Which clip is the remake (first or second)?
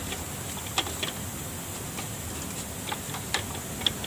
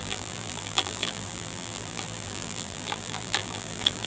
second